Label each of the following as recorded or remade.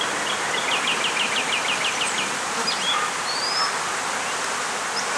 recorded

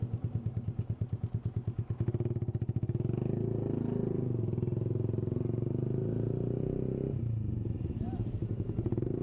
recorded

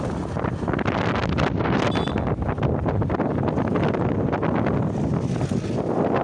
recorded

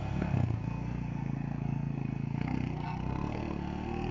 remade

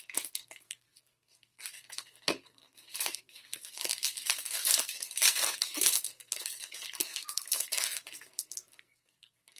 remade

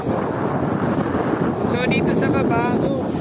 recorded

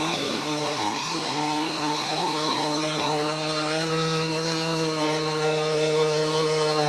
remade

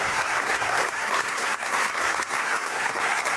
remade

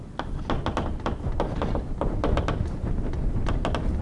recorded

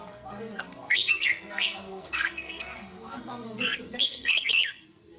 remade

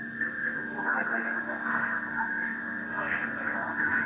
remade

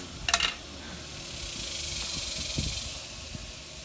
recorded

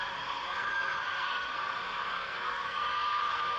remade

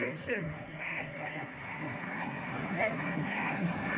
remade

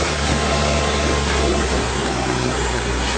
remade